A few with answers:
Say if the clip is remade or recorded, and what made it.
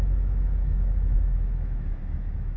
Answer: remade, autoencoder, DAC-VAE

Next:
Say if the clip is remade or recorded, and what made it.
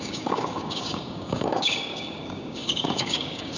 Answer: remade, codec, DAC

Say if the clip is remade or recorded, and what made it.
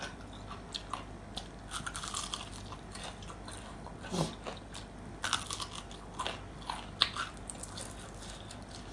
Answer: recorded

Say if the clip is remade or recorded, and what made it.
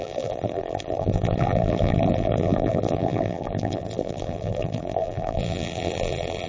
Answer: remade, vocoder, BigVGAN v2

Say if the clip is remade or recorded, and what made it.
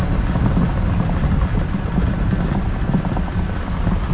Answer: recorded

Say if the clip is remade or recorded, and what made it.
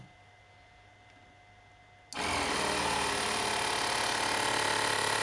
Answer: recorded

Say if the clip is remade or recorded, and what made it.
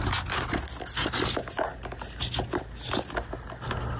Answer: recorded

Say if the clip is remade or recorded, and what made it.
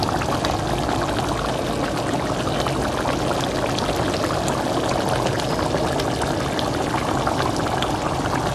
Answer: recorded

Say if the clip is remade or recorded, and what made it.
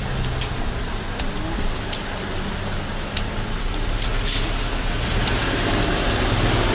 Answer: recorded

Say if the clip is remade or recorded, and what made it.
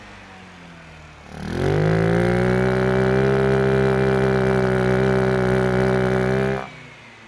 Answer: recorded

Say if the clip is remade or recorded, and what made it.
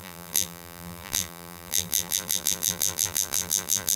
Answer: remade, vocoder, BigVGAN v2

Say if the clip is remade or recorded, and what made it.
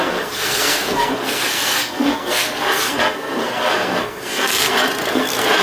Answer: remade, codec, SNAC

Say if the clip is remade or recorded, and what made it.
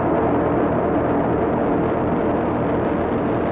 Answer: recorded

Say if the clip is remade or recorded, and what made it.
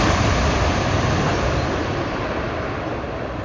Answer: recorded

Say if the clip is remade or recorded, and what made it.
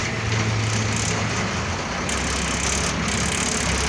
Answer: recorded